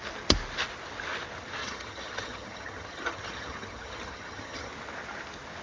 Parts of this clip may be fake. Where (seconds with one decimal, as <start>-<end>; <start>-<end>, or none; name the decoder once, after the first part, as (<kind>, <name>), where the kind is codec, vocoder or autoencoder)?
1.6-4.7 (vocoder, HiFi-GAN)